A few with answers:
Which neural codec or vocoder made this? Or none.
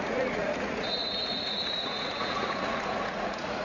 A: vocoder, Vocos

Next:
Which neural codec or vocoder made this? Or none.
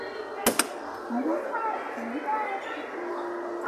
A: none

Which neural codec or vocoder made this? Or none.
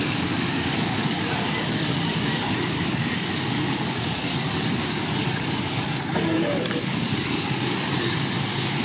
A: codec, DAC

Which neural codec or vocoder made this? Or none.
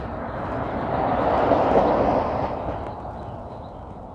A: none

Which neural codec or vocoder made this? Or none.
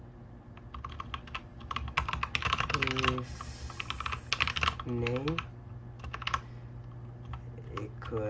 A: none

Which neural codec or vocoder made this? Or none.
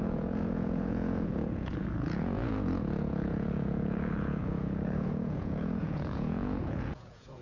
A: vocoder, Vocos